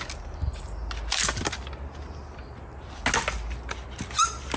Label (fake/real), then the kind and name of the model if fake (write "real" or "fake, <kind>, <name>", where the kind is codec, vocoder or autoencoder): real